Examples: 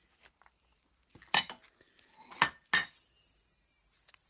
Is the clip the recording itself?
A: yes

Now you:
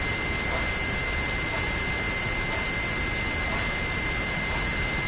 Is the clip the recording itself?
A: yes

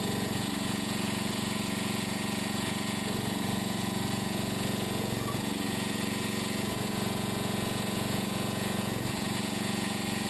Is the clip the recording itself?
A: no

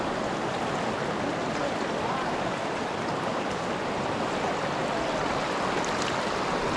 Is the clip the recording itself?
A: yes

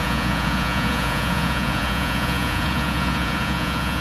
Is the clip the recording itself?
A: no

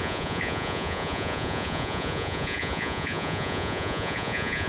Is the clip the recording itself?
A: no